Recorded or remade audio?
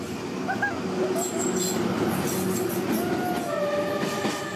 recorded